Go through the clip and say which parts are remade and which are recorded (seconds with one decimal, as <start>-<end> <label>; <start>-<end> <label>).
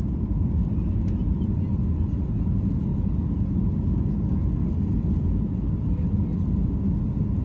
0.0-7.4 recorded